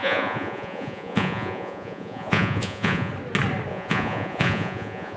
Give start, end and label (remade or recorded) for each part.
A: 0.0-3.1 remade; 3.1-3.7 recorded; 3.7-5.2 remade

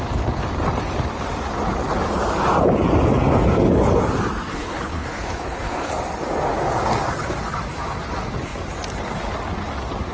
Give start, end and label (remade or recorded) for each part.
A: 0.0-4.5 recorded; 4.5-5.9 remade; 5.9-10.1 recorded